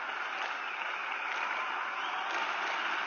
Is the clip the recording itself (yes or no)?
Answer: yes